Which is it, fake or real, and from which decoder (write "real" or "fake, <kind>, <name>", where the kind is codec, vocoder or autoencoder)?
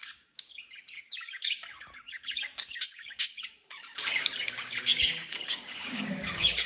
fake, codec, DAC